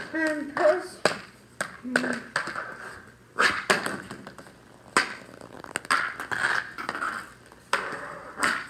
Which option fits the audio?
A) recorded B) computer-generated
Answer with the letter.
A